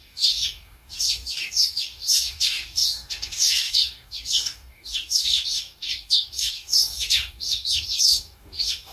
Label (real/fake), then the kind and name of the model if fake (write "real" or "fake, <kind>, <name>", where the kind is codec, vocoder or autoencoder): fake, codec, DAC